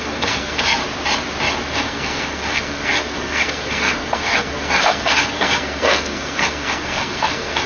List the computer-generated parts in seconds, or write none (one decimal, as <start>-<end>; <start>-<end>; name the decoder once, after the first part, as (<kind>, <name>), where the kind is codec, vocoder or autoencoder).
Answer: 0.0-0.8 (codec, SNAC); 1.7-7.7